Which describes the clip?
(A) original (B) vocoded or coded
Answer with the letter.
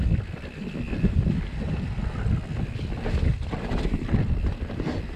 A